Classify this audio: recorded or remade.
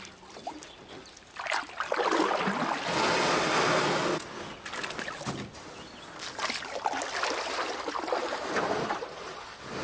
recorded